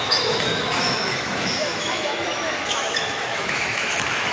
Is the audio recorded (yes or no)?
no